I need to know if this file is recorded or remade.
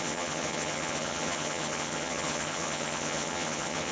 remade